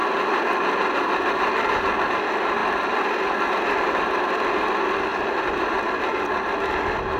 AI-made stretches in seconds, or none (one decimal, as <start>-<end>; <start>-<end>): none

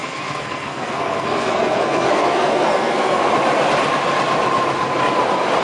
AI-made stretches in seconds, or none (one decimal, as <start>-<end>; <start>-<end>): 0.0-3.3

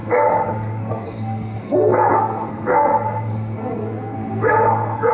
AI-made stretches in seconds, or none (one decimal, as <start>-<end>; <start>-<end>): 0.0-5.1

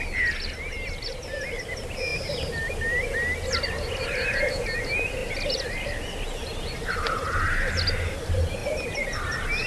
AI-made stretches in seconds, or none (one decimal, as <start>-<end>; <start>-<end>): none

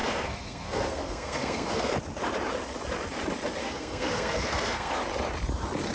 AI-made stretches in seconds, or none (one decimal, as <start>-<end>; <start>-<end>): 0.0-1.9; 3.6-5.0

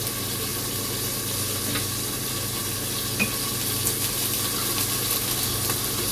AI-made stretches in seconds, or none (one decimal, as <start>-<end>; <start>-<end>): none

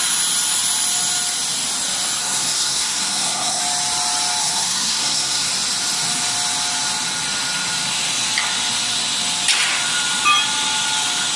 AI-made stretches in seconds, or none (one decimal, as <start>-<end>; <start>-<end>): 2.2-3.6; 4.4-5.5